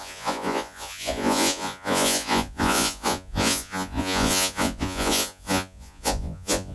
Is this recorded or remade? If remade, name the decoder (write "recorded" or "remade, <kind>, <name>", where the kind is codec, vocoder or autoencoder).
remade, vocoder, Vocos